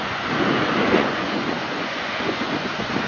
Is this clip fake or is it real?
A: fake